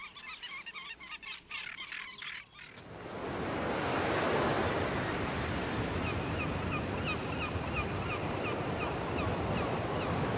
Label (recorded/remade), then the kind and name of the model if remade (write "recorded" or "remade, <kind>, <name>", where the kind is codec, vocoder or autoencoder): recorded